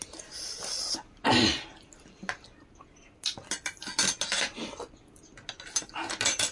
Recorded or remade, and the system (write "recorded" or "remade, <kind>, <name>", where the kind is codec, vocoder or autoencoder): recorded